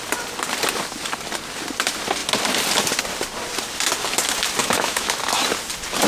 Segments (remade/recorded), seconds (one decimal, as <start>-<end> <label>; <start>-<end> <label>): 0.0-4.6 recorded; 4.6-5.2 remade; 5.2-6.1 recorded